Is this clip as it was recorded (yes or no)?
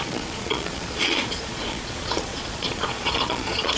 no